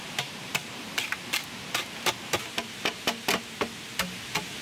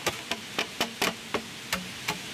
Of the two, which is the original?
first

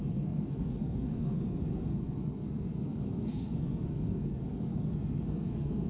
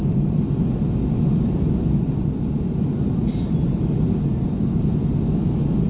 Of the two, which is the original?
second